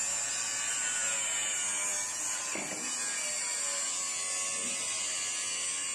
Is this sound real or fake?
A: real